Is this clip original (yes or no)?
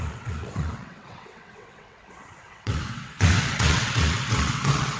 no